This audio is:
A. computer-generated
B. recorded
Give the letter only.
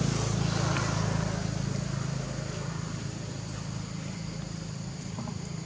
B